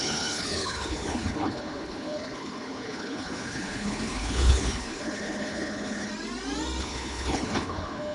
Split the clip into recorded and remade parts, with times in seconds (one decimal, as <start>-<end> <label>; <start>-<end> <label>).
0.0-6.1 remade; 6.1-6.8 recorded; 6.8-8.1 remade